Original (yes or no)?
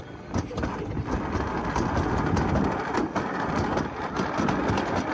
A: yes